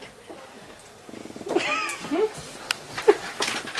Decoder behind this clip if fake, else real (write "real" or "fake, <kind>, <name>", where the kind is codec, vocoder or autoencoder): real